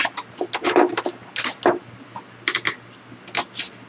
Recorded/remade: recorded